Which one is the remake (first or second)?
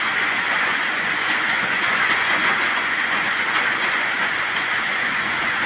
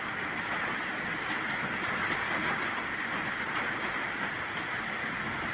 first